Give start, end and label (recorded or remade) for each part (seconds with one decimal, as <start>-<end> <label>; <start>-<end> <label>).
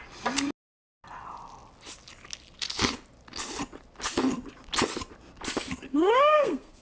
0.0-5.9 recorded; 5.9-6.8 remade